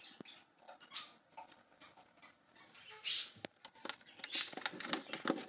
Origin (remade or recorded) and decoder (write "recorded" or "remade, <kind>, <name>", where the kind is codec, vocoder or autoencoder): recorded